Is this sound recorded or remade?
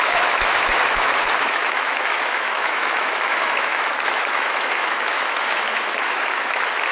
remade